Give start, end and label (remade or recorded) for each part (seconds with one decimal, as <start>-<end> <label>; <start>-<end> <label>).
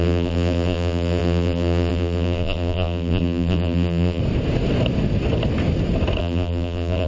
0.0-4.2 remade; 4.2-6.2 recorded; 6.2-7.1 remade